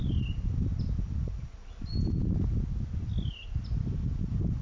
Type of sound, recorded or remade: recorded